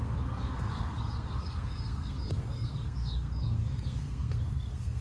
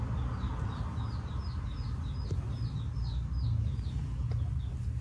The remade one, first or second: first